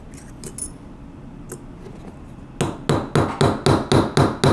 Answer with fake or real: real